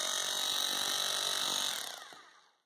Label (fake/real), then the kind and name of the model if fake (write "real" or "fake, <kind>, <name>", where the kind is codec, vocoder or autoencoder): real